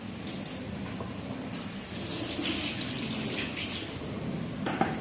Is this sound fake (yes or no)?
no